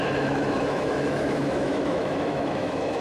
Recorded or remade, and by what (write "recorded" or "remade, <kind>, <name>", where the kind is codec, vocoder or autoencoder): remade, autoencoder, DAC-VAE